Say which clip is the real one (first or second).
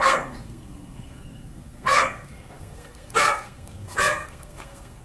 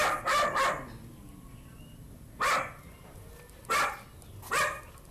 second